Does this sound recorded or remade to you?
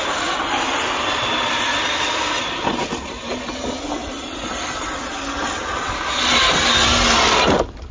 recorded